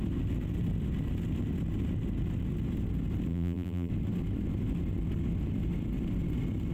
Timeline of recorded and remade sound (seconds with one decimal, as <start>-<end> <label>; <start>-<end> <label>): 0.0-3.3 recorded; 3.3-3.9 remade; 3.9-6.7 recorded